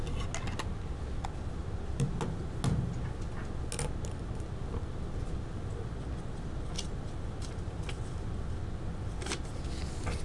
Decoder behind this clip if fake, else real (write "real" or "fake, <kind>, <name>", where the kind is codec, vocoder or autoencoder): real